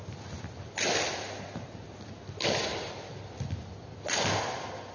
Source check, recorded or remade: recorded